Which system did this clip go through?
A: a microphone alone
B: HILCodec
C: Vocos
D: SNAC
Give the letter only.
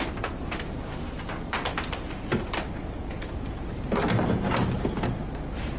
A